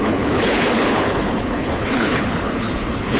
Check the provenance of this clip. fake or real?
fake